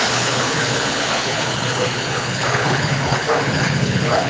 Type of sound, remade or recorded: remade